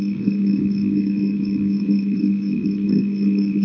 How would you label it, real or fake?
fake